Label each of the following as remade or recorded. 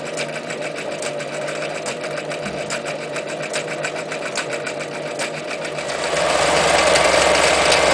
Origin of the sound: remade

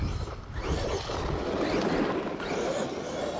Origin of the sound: recorded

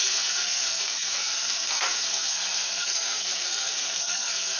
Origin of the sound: remade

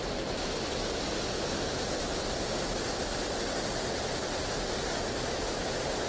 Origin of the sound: recorded